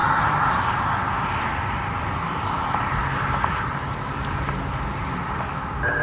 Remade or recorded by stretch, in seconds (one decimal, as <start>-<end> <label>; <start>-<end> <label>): 0.0-6.0 recorded